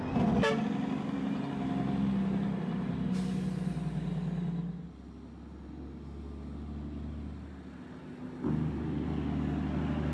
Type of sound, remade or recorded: recorded